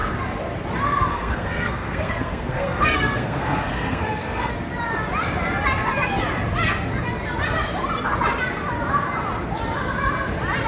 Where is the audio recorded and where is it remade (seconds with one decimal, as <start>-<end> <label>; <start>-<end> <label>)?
0.0-1.1 recorded; 1.1-4.5 remade; 4.5-10.7 recorded